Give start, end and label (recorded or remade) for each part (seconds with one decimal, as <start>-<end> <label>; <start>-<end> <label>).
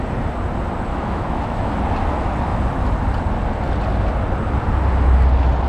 0.0-0.9 recorded; 0.9-1.7 remade; 1.7-5.7 recorded